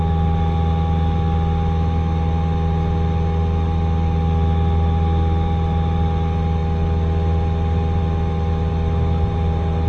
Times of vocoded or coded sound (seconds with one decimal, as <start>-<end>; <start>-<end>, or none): none